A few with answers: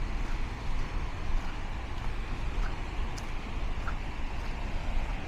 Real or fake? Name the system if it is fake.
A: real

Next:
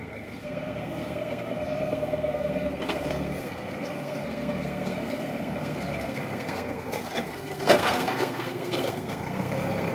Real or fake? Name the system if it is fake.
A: fake, codec, SNAC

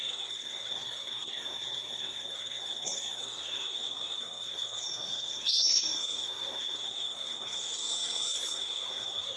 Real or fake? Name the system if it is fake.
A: fake, codec, SNAC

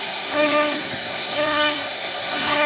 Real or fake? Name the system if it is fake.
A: fake, codec, SNAC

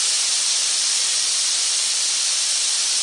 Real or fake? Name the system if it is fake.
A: real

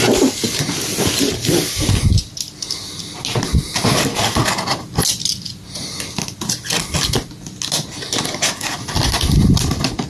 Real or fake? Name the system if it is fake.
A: real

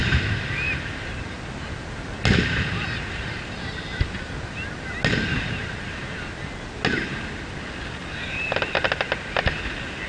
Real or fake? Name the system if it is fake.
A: real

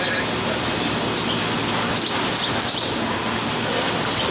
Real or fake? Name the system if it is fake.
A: real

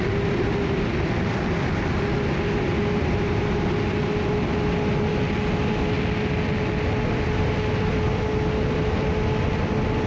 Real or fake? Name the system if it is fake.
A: real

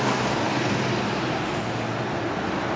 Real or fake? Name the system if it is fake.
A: real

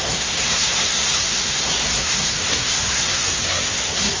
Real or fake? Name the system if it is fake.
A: fake, codec, SNAC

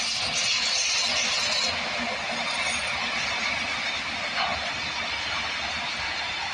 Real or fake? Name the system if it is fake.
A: real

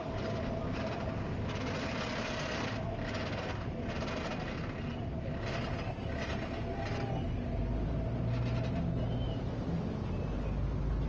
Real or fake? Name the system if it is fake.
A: real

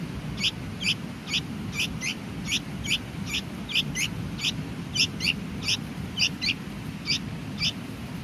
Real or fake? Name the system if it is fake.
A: real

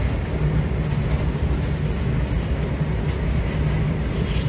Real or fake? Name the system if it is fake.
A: real